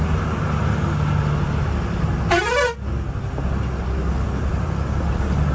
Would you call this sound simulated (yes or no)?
no